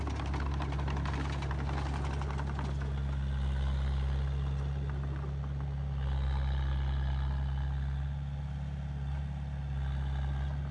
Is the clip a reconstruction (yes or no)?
no